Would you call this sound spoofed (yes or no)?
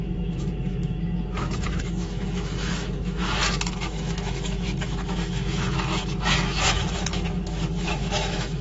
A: yes